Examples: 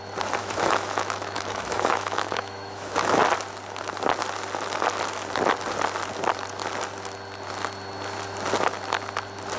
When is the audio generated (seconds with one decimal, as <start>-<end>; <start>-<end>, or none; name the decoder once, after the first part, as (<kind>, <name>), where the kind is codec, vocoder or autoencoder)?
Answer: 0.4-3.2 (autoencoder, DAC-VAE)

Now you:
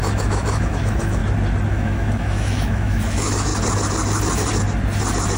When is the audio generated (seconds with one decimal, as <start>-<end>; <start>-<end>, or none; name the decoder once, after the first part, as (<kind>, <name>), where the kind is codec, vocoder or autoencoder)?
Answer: 0.0-1.2 (autoencoder, DAC-VAE); 1.7-3.5

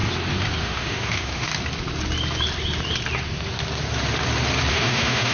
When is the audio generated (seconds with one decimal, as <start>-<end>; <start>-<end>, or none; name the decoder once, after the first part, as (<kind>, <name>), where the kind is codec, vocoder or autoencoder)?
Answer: 0.6-1.5 (autoencoder, DAC-VAE); 4.7-5.3

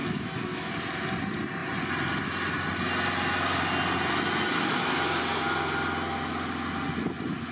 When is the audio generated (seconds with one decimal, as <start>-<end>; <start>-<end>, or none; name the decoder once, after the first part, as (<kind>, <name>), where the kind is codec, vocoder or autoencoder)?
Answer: 0.0-0.7 (autoencoder, DAC-VAE)